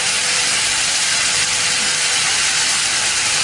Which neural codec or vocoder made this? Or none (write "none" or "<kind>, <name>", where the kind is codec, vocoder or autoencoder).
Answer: none